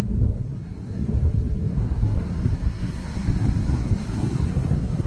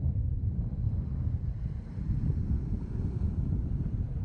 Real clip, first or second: second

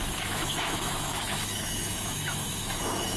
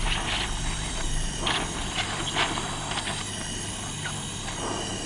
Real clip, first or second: second